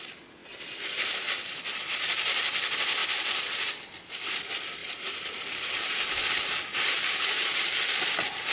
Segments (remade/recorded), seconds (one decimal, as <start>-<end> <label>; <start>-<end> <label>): 0.0-4.8 recorded; 4.8-7.8 remade; 7.8-8.5 recorded